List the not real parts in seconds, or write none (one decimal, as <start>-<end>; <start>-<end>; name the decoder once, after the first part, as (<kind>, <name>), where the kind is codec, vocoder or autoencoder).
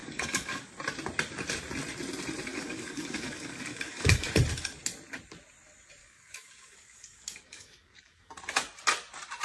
0.0-0.7 (codec, DAC); 2.5-4.3; 6.0-8.3